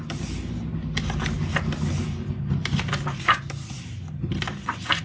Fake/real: real